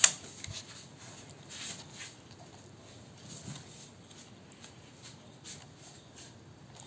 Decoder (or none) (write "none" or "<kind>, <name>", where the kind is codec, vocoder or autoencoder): none